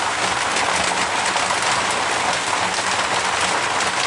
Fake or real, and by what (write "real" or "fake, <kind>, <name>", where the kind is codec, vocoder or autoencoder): real